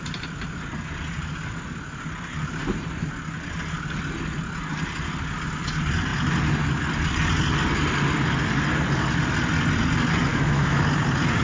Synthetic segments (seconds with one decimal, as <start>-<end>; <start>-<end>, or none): 10.3-10.8